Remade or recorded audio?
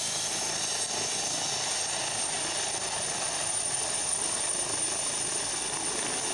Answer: recorded